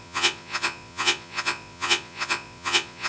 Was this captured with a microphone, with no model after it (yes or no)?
no